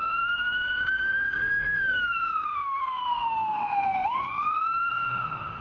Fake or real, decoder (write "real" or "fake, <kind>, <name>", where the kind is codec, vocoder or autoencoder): fake, autoencoder, DAC-VAE